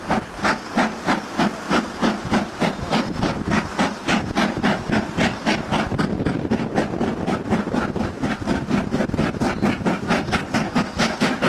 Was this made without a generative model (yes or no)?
yes